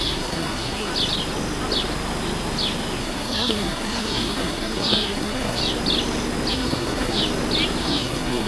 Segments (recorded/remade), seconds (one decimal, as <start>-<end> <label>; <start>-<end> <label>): 0.0-0.9 remade; 0.9-3.0 recorded; 3.0-5.6 remade; 5.6-6.5 recorded; 6.5-7.2 remade; 7.2-7.8 recorded; 7.8-8.5 remade